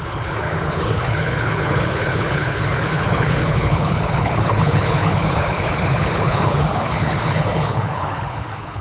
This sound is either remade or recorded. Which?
remade